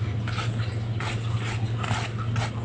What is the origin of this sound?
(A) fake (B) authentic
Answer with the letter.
B